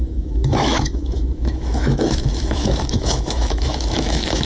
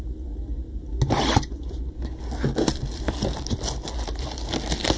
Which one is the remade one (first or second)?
first